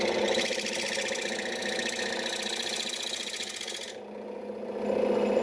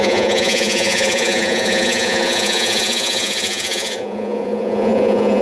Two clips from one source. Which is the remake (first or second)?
second